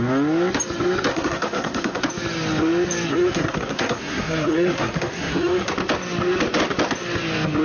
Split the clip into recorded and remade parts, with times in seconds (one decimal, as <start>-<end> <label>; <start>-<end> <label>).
0.0-1.1 recorded; 1.1-2.0 remade; 2.0-3.1 recorded; 3.1-5.7 remade; 5.7-7.6 recorded

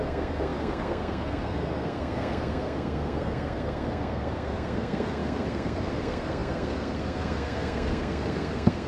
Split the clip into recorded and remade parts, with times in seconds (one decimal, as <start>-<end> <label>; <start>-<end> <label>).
0.0-8.9 remade

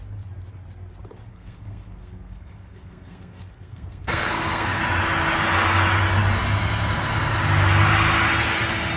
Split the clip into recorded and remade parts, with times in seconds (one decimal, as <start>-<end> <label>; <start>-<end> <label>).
0.0-1.3 recorded; 1.3-4.8 remade; 4.8-9.0 recorded